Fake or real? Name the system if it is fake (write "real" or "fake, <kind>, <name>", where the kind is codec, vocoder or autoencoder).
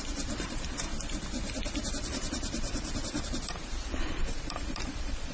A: fake, vocoder, BigVGAN v2